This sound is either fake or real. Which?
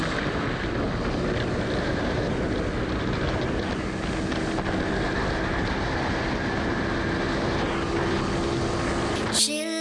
real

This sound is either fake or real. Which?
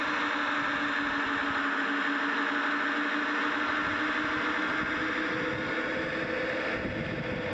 real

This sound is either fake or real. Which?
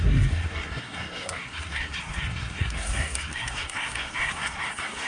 fake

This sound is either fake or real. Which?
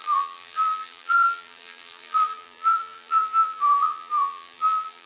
fake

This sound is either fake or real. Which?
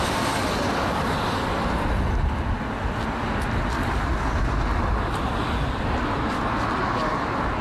real